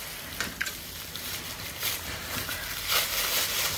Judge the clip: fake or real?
real